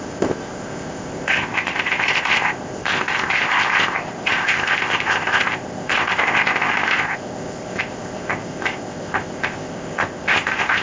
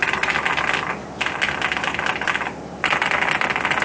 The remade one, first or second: first